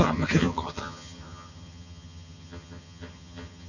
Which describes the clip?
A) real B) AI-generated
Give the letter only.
B